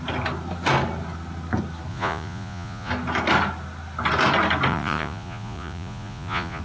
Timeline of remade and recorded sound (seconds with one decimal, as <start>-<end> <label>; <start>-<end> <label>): 0.0-1.9 recorded; 1.9-2.9 remade; 2.9-4.7 recorded; 4.7-6.6 remade